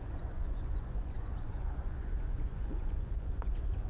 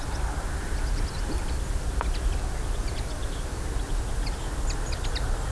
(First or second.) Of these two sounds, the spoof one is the first